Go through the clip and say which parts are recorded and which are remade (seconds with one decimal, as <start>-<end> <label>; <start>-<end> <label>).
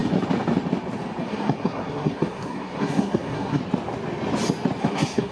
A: 0.0-1.2 recorded; 1.2-3.6 remade; 3.6-4.8 recorded; 4.8-5.3 remade